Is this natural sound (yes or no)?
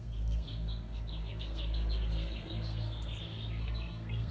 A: no